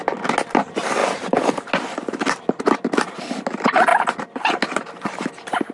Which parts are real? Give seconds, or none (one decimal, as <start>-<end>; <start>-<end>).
0.0-5.7